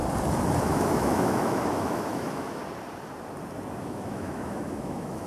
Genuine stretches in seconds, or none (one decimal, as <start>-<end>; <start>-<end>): 0.0-0.6; 2.6-3.8